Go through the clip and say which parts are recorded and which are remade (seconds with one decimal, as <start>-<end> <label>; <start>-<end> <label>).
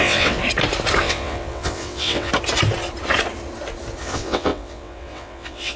0.0-0.4 remade; 0.4-1.0 recorded; 1.0-2.3 remade; 2.3-4.0 recorded; 4.0-5.8 remade